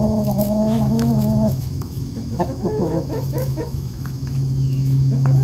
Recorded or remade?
remade